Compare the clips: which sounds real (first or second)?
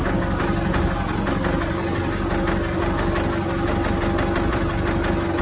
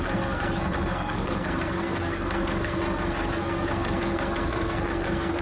first